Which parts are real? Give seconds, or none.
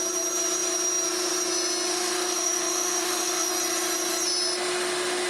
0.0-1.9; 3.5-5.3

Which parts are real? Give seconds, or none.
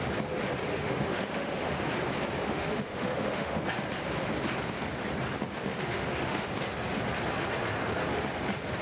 0.0-0.7; 1.9-2.4; 3.6-5.7; 6.5-8.8